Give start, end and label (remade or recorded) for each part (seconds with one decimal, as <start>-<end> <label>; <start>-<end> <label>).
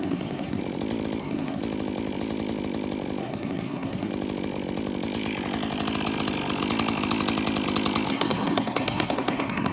0.0-0.6 remade; 0.6-1.2 recorded; 1.2-1.6 remade; 1.6-3.2 recorded; 3.2-4.1 remade; 4.1-8.1 recorded; 8.1-9.7 remade